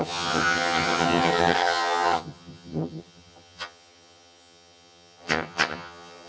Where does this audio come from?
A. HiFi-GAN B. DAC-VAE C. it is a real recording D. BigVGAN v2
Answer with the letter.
A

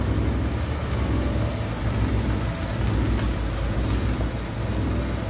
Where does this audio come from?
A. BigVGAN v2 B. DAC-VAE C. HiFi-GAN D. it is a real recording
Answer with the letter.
D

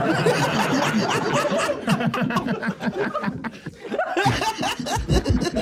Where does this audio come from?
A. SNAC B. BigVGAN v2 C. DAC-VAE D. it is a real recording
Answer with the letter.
D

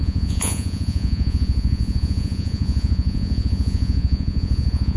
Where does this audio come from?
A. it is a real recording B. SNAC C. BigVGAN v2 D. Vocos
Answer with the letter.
D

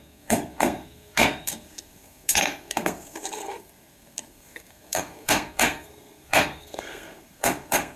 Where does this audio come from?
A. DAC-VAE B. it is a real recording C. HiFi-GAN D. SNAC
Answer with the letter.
D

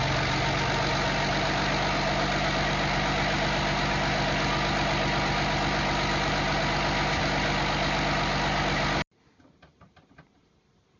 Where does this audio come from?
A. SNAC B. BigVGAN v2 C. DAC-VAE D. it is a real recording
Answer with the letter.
D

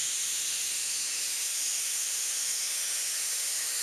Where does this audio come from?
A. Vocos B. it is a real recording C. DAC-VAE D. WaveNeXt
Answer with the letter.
C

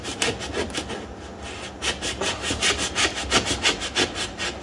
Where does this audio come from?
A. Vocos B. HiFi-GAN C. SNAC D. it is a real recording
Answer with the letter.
D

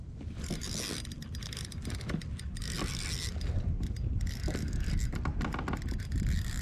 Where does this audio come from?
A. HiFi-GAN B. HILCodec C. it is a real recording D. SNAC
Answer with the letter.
C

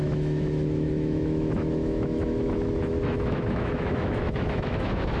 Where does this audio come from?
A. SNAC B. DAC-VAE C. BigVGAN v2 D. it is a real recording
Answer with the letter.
B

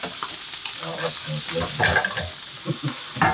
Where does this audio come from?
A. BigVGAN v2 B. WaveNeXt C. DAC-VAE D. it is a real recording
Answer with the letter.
D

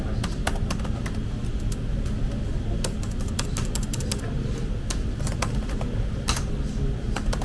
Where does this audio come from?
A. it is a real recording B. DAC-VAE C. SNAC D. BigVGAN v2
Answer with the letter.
A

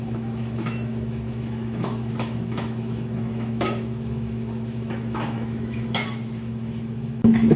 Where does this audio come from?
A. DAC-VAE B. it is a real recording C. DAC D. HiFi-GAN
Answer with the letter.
A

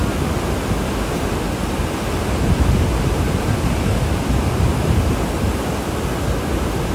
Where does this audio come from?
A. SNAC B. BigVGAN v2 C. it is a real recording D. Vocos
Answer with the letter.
C